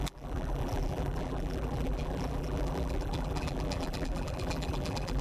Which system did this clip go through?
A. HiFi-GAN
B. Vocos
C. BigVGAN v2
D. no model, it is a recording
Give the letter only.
C